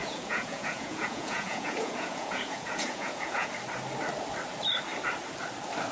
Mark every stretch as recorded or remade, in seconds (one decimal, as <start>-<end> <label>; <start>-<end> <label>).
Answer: 0.0-3.5 remade; 3.5-5.9 recorded